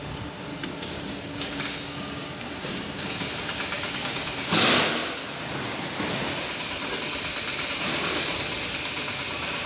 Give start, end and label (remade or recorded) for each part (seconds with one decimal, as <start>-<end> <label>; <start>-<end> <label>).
0.0-0.5 recorded; 0.5-3.3 remade; 3.3-3.7 recorded; 3.7-4.5 remade; 4.5-9.7 recorded